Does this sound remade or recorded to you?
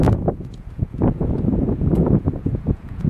remade